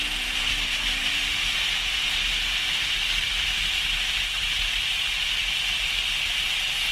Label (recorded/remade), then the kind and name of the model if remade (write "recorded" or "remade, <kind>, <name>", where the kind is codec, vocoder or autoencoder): recorded